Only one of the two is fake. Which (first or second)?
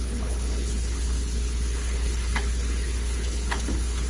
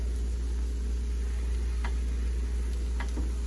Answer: first